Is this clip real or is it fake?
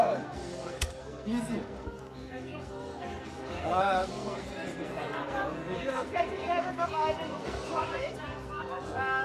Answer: fake